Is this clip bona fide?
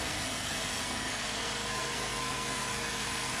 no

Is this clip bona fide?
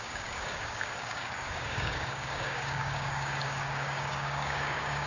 no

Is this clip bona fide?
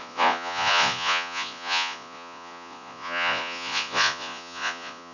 no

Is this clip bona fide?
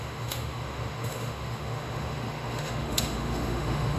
no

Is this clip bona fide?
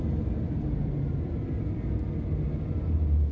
yes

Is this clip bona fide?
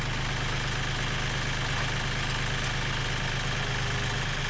yes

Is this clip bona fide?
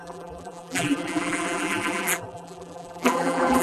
no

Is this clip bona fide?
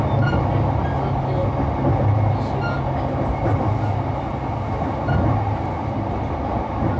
yes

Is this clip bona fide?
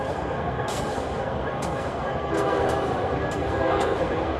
no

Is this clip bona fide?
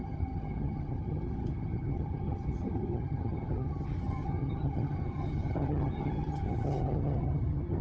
no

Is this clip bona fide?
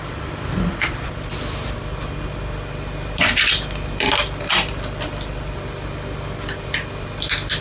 yes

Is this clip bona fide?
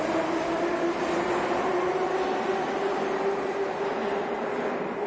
yes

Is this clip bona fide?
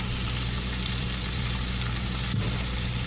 no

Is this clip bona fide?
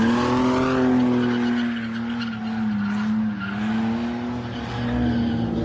yes